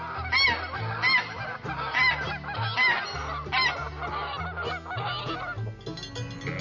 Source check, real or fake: real